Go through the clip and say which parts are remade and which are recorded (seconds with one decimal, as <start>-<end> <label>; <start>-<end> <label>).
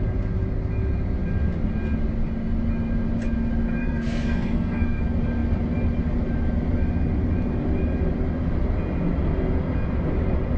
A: 0.0-3.8 recorded; 3.8-5.0 remade; 5.0-10.6 recorded